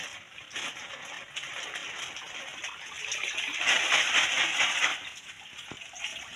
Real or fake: real